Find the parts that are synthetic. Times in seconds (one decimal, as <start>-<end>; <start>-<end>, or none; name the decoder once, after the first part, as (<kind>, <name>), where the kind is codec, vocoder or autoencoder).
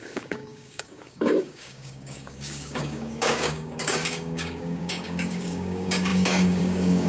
0.0-7.1 (codec, DAC)